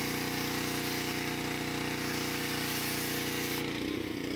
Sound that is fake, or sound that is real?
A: real